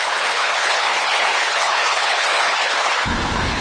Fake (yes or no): yes